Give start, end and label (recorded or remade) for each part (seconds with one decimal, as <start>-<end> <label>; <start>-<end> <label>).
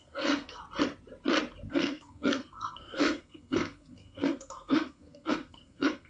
0.0-0.6 remade; 0.6-1.7 recorded; 1.7-6.1 remade